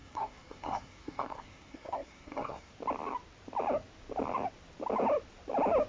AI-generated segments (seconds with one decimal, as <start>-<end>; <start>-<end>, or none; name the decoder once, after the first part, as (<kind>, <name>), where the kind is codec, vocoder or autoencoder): 0.0-2.7 (codec, SNAC)